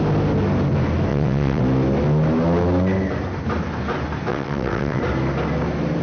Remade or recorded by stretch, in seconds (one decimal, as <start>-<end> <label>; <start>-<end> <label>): 0.0-1.1 recorded; 1.1-1.6 remade; 1.6-4.3 recorded; 4.3-5.0 remade; 5.0-6.0 recorded